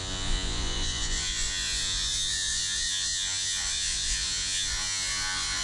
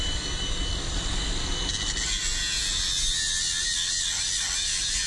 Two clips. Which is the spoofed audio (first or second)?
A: first